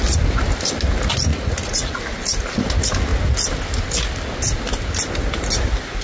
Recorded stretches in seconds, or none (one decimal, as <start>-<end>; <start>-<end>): 0.0-1.3; 2.0-6.0